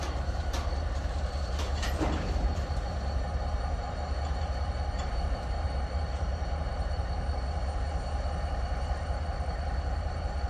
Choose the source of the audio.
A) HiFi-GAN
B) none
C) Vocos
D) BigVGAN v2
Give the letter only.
D